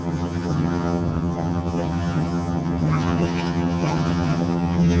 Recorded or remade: remade